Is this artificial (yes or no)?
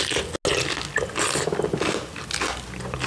no